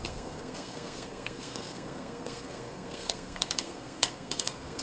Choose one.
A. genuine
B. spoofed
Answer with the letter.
B